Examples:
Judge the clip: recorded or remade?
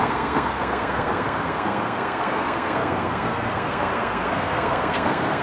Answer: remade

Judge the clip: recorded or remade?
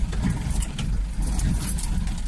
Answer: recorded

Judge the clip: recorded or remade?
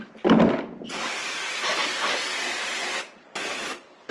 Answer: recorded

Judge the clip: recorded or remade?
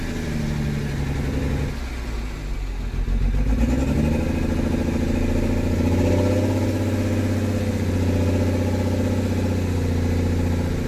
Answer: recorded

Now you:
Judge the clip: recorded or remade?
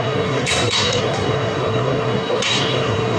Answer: remade